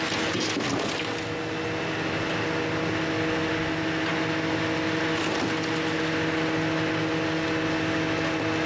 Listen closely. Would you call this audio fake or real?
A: real